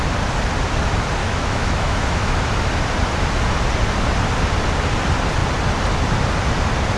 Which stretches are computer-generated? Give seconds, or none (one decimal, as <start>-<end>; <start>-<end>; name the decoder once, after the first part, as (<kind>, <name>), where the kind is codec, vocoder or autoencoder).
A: 1.2-2.4 (autoencoder, DAC-VAE)

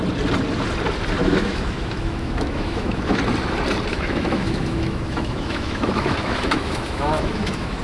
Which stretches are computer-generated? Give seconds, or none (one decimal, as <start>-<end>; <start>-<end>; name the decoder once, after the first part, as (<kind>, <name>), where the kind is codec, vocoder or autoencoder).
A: 1.2-3.2 (autoencoder, DAC-VAE); 3.9-7.8